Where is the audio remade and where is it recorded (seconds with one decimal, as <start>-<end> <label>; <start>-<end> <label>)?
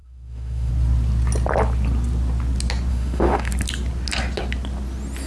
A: 0.0-0.7 remade; 0.7-2.9 recorded; 2.9-3.5 remade; 3.5-5.3 recorded